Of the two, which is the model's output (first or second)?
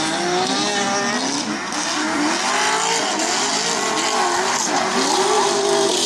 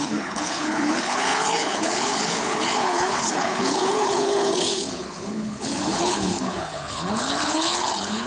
second